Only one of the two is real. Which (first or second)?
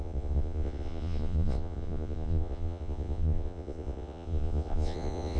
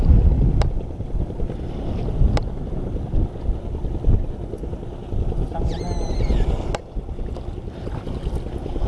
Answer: second